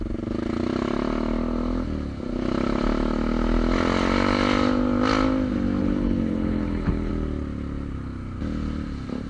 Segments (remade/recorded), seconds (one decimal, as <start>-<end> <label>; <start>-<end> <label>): 0.0-5.8 recorded; 5.8-7.1 remade; 7.1-9.3 recorded